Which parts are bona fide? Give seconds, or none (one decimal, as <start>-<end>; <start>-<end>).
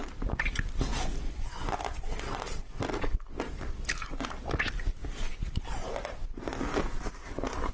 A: 0.0-7.7